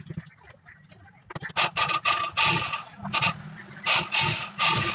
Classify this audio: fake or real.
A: real